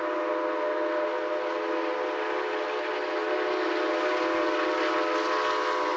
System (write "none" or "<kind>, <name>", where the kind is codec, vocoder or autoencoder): none